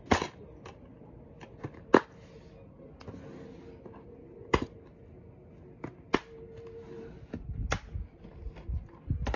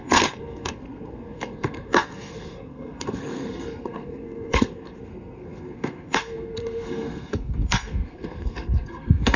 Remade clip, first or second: second